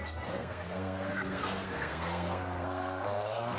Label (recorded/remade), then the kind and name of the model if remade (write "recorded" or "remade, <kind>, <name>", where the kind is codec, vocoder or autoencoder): remade, codec, SNAC